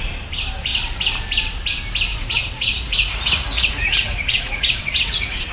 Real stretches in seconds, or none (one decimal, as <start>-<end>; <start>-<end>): 0.0-2.1